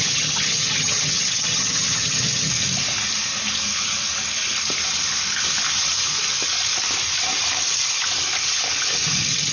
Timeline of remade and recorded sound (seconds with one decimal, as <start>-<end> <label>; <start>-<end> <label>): 0.0-2.5 remade; 2.5-9.5 recorded